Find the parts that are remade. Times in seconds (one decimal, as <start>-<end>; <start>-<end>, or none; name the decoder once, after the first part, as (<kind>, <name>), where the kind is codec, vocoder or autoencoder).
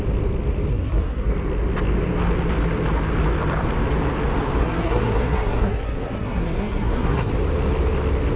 0.7-1.3 (codec, SNAC); 4.6-7.3